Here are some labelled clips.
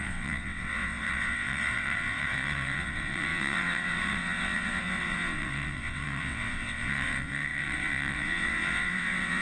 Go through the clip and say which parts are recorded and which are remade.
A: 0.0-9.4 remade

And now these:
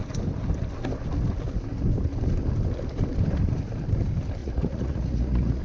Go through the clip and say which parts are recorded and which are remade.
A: 0.0-4.4 recorded; 4.4-5.6 remade

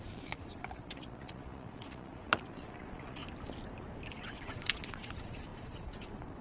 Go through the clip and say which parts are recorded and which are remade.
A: 0.0-3.2 remade; 3.2-4.1 recorded; 4.1-6.4 remade

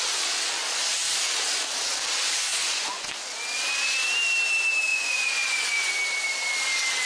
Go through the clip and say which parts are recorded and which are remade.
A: 0.0-2.5 recorded; 2.5-3.1 remade; 3.1-4.9 recorded; 4.9-5.9 remade; 5.9-7.1 recorded

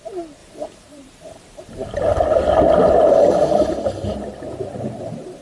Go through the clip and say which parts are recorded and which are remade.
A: 0.0-0.4 recorded; 0.4-2.2 remade; 2.2-5.4 recorded